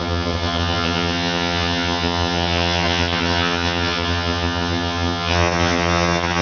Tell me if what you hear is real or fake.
fake